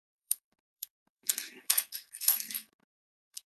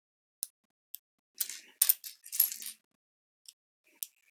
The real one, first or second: second